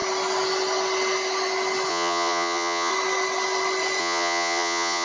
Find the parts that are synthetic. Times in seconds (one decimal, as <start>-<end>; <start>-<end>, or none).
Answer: 1.9-2.9; 4.0-5.0